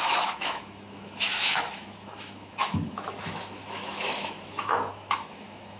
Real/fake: fake